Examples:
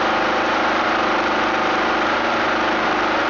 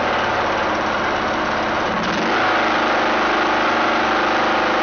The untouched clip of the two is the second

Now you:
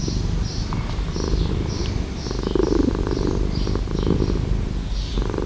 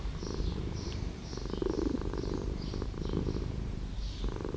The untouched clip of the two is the first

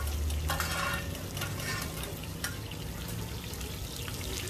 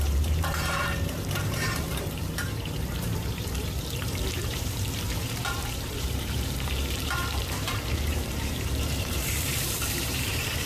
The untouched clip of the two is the first